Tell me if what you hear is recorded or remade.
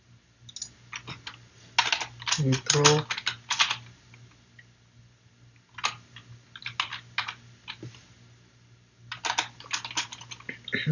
recorded